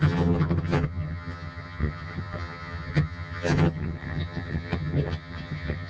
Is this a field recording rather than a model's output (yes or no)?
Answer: no